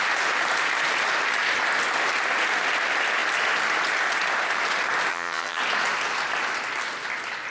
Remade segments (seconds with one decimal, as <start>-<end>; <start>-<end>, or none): 5.1-5.6